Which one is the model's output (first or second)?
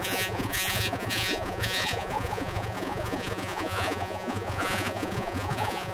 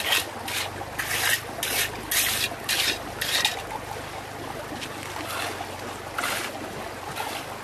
first